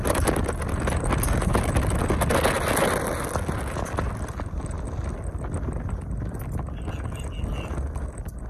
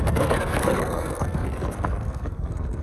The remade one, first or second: second